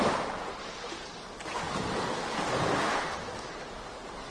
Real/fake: real